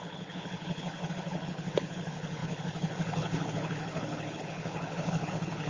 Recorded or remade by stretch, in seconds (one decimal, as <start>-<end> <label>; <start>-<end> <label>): 0.0-5.7 remade